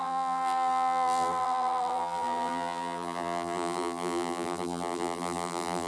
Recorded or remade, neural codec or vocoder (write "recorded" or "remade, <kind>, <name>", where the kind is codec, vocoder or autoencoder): remade, vocoder, BigVGAN v2